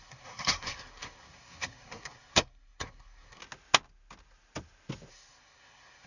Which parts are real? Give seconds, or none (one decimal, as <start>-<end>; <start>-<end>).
3.4-5.1